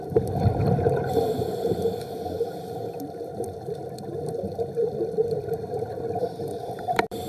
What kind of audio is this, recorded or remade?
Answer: remade